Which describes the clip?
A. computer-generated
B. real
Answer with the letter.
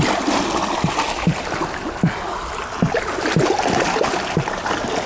B